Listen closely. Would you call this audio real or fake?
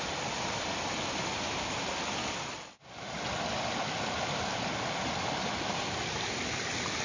real